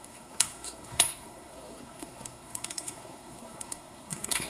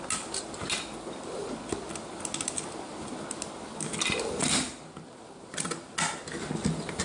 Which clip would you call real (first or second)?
second